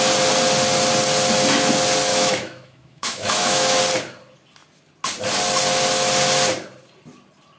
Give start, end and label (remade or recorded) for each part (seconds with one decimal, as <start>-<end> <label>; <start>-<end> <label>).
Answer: 0.0-2.1 recorded; 2.1-3.8 remade; 3.8-7.6 recorded